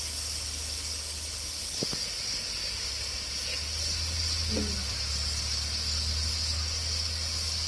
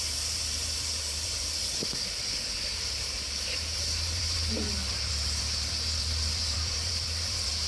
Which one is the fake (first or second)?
second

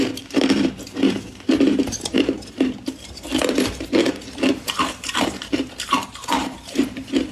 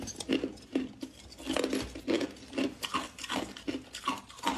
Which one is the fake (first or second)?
first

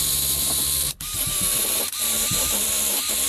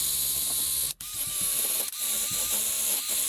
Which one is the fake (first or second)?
first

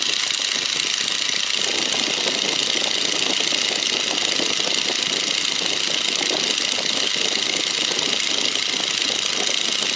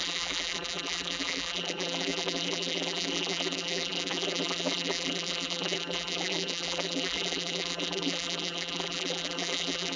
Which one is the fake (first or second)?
second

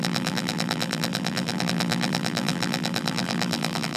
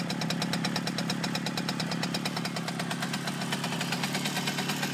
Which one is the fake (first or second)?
first